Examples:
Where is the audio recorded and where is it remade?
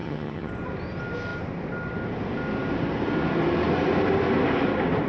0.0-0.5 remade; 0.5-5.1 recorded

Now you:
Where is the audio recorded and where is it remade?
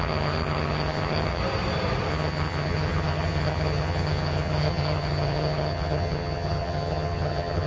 0.0-1.4 remade; 1.4-2.1 recorded; 2.1-7.7 remade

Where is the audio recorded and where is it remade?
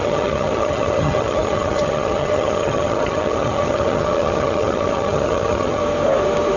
0.0-5.8 remade; 5.8-6.6 recorded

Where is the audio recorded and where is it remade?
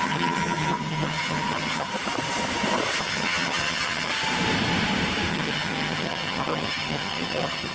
0.0-1.9 remade; 1.9-3.0 recorded; 3.0-4.1 remade; 4.1-5.3 recorded; 5.3-7.7 remade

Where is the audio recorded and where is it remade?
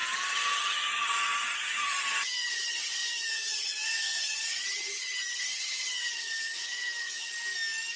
0.0-7.3 remade; 7.3-8.0 recorded